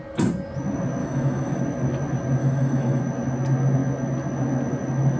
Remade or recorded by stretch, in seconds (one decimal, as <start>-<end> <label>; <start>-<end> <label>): 0.0-1.0 recorded; 1.0-1.6 remade; 1.6-2.4 recorded; 2.4-3.0 remade; 3.0-5.2 recorded